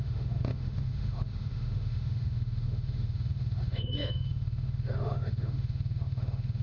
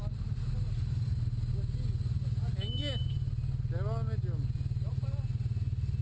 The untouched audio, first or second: second